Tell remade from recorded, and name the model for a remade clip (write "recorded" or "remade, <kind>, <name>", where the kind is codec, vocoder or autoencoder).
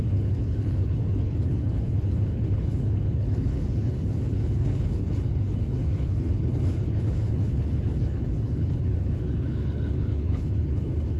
remade, codec, HILCodec